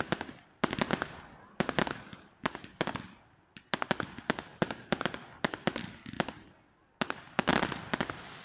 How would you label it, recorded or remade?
recorded